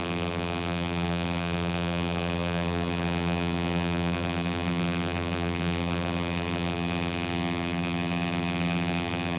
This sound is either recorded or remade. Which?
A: remade